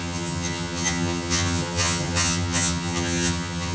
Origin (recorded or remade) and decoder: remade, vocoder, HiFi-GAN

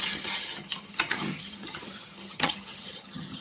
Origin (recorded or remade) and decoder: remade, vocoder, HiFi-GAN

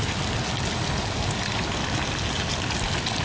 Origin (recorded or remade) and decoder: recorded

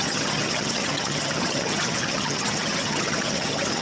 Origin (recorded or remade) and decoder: remade, vocoder, HiFi-GAN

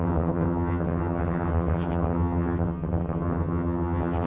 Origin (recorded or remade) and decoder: remade, vocoder, HiFi-GAN